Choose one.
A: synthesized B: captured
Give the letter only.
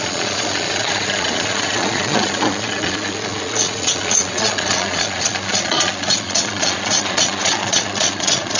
A